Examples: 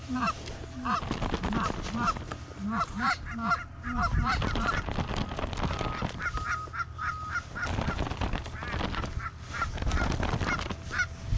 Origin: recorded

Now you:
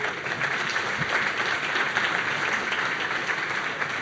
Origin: recorded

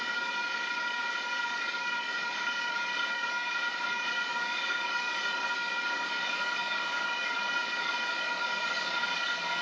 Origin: remade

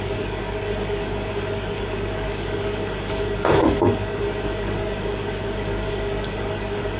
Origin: remade